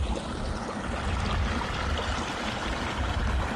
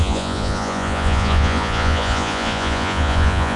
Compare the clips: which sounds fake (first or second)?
second